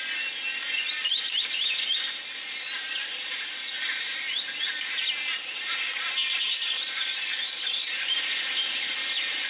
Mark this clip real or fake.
real